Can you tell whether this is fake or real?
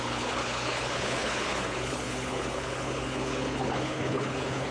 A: fake